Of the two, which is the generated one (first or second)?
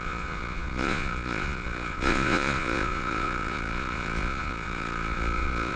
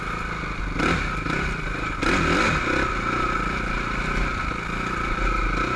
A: first